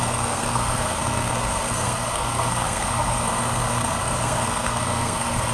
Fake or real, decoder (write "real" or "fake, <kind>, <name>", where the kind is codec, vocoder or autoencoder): fake, codec, SNAC